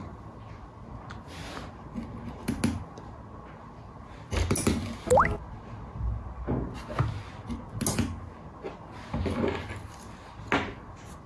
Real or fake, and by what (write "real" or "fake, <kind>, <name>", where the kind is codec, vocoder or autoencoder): real